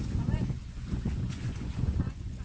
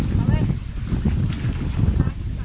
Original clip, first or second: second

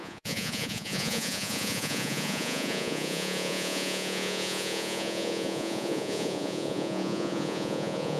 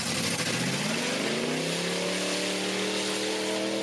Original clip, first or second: second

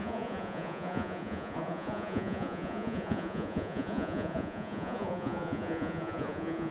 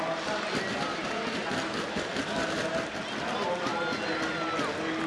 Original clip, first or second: second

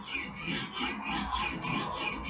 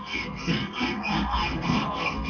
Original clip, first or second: first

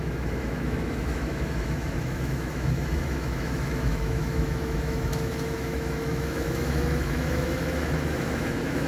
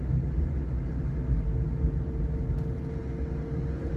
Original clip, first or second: second